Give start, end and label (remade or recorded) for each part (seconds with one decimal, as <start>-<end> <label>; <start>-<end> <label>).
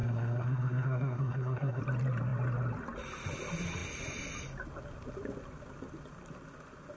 0.0-1.8 remade; 1.8-7.0 recorded